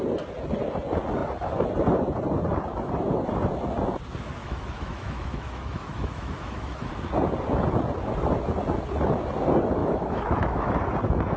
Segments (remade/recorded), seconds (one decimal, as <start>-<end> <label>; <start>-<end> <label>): 0.0-4.4 recorded; 4.4-6.9 remade; 6.9-9.8 recorded; 9.8-10.8 remade; 10.8-11.4 recorded